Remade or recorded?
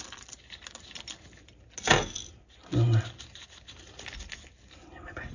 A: recorded